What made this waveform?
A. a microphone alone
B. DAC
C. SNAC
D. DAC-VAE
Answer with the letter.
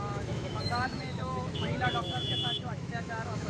D